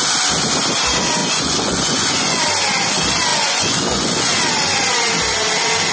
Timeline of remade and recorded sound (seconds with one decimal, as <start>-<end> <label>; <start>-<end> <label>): 0.0-1.2 recorded; 1.2-2.4 remade; 2.4-3.3 recorded; 3.3-4.3 remade; 4.3-5.9 recorded